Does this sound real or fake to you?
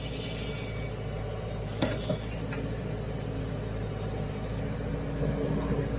real